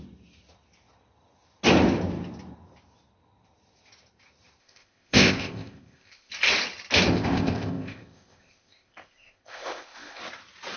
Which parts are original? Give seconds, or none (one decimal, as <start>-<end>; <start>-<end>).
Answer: 0.0-4.6; 6.3-7.1; 10.2-10.8